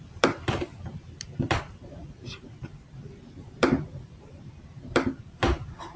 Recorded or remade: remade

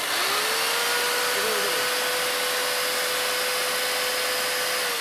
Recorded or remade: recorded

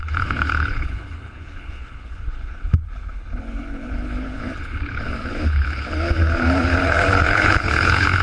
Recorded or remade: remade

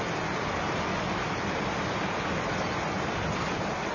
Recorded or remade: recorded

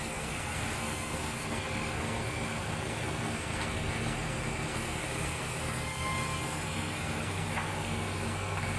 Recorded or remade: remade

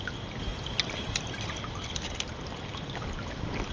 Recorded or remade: recorded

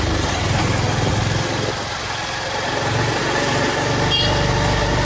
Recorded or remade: recorded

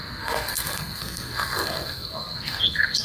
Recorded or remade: remade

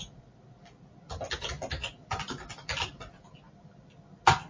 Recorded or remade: recorded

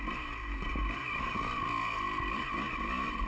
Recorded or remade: recorded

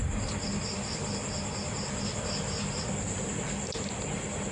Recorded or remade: recorded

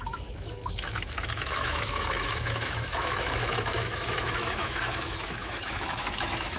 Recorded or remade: remade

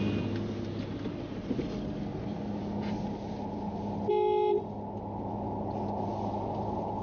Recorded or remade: recorded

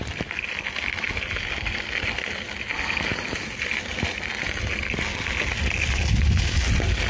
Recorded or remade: recorded